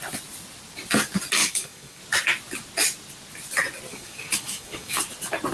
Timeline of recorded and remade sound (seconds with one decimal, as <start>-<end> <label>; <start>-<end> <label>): 0.0-1.4 recorded; 1.4-2.0 remade; 2.0-3.9 recorded; 3.9-5.0 remade; 5.0-5.5 recorded